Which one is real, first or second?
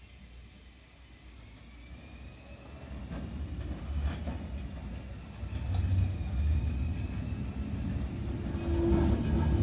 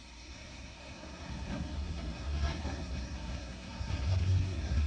first